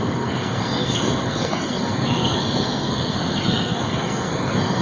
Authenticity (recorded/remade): remade